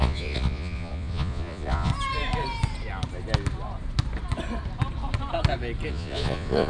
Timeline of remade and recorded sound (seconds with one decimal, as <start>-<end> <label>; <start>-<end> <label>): 0.0-1.9 remade; 1.9-5.9 recorded; 5.9-6.7 remade